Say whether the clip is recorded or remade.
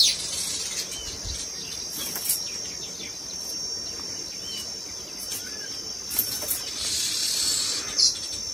recorded